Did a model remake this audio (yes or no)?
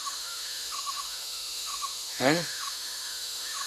yes